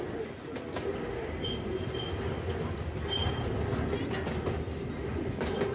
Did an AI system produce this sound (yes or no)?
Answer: no